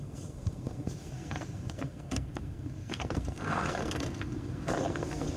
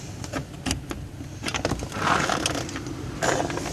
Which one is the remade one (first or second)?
first